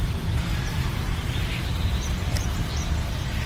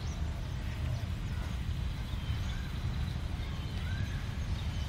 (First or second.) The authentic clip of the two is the second